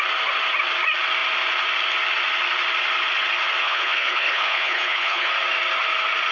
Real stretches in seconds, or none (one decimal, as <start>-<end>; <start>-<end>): 0.0-3.6; 5.3-6.3